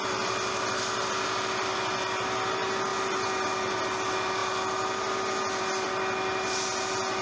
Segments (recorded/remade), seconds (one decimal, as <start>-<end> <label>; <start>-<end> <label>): 0.0-7.2 recorded